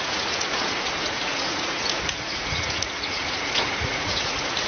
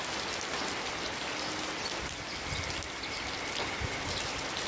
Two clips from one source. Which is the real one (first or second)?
second